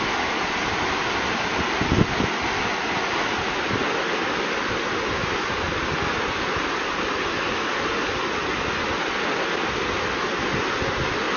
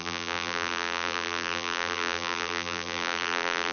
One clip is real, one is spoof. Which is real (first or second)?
first